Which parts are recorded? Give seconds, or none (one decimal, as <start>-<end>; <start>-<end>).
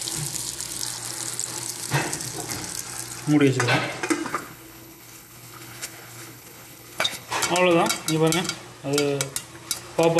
0.0-4.3; 7.3-10.2